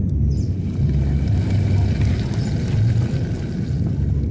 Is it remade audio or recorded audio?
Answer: recorded